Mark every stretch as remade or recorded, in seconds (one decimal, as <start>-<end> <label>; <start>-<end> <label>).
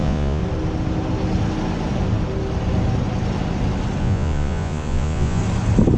0.0-0.4 remade; 0.4-4.0 recorded; 4.0-5.4 remade; 5.4-6.0 recorded